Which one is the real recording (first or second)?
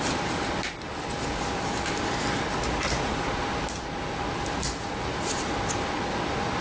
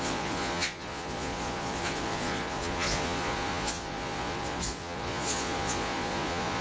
first